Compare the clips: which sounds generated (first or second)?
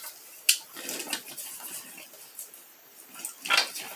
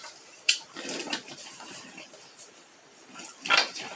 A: second